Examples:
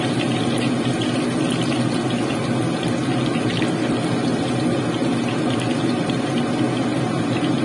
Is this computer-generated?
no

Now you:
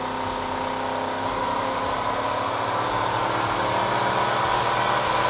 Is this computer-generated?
no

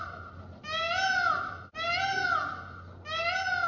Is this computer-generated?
no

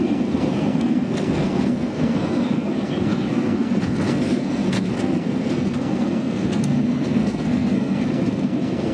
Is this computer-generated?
yes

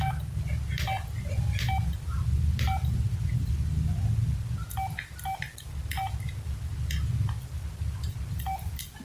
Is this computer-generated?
no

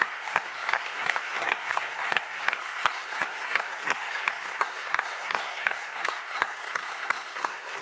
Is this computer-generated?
yes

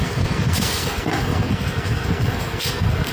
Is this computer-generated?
yes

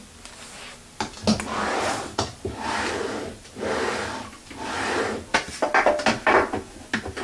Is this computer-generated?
no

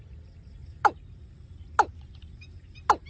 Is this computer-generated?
no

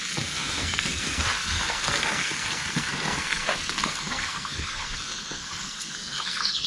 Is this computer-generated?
yes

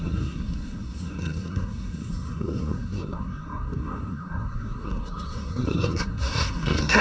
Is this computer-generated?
yes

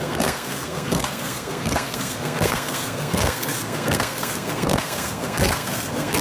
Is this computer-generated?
yes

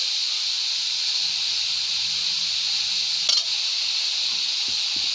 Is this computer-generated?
no